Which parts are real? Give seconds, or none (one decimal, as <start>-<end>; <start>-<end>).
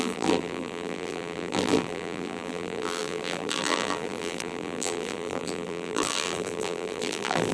none